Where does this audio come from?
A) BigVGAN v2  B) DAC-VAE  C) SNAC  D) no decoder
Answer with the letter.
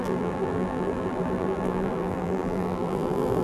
A